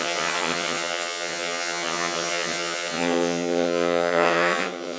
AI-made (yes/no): yes